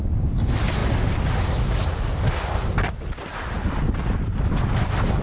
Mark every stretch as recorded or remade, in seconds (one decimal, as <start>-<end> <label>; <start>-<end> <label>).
0.0-5.2 recorded

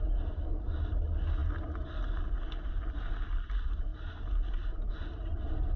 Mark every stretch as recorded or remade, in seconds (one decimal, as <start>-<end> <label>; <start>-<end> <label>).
0.0-5.8 recorded

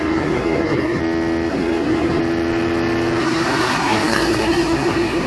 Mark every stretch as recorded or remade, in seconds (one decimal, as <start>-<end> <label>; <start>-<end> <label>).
0.0-1.0 remade; 1.0-1.5 recorded; 1.5-2.2 remade; 2.2-3.2 recorded; 3.2-5.3 remade

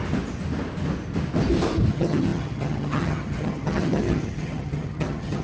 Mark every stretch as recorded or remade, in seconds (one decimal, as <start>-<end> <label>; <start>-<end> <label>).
0.0-1.9 recorded; 1.9-5.4 remade

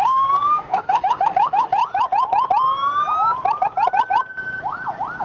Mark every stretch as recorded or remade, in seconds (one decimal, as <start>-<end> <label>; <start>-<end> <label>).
0.0-1.8 remade; 1.8-5.2 recorded